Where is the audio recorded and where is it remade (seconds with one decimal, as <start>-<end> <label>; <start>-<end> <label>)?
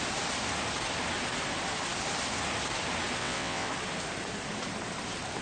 0.0-3.2 recorded; 3.2-3.7 remade; 3.7-5.4 recorded